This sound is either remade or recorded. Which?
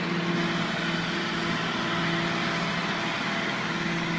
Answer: recorded